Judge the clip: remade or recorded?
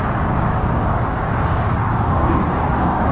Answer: remade